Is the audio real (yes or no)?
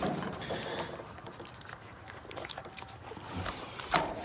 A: no